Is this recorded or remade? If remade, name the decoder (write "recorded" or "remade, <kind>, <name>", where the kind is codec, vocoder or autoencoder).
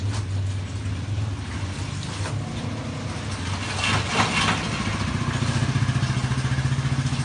recorded